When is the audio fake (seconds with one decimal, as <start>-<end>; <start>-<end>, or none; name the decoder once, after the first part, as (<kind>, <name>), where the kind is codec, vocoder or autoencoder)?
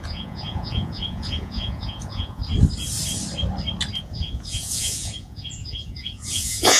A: 0.0-2.4 (vocoder, Vocos); 4.0-6.8